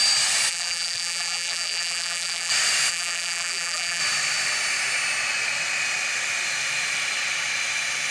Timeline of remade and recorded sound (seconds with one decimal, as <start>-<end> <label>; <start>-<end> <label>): 0.0-0.5 recorded; 0.5-2.5 remade; 2.5-2.9 recorded; 2.9-4.0 remade; 4.0-8.1 recorded